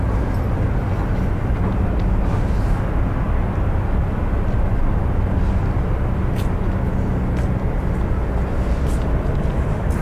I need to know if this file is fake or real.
real